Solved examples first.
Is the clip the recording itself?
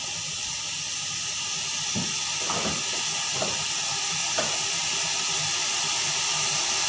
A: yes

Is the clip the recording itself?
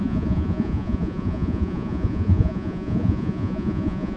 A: no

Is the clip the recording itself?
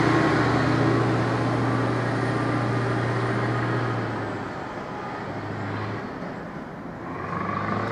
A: yes